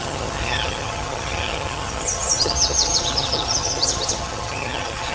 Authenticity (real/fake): fake